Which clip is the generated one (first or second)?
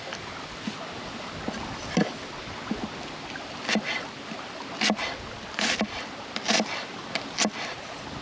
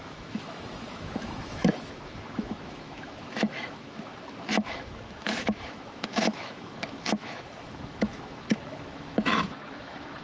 second